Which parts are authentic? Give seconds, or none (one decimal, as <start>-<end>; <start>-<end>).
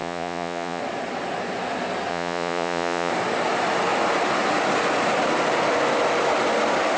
0.8-2.1; 3.1-7.0